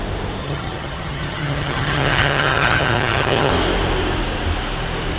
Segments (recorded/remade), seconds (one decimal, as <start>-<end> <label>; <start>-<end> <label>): 0.0-0.4 recorded; 0.4-3.5 remade; 3.5-5.2 recorded